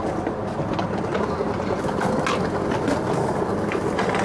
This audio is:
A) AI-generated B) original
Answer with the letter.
B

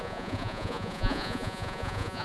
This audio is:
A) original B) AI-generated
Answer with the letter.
B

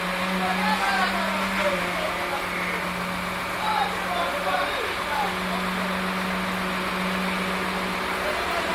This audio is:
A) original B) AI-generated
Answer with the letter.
A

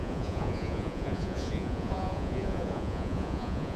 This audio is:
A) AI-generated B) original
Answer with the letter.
A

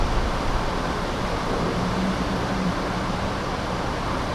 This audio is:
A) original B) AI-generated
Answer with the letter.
A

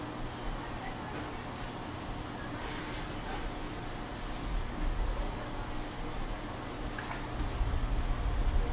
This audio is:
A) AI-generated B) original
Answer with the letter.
B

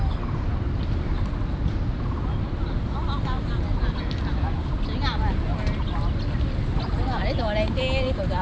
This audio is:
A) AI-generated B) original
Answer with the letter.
B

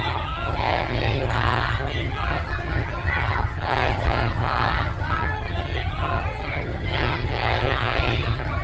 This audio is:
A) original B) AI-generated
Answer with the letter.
B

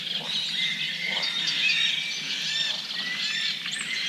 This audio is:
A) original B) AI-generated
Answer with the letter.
A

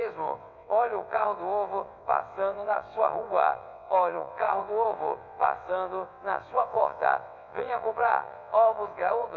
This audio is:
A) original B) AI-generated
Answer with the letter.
B